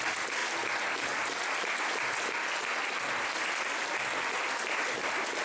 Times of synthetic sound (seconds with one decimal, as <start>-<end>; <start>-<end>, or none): none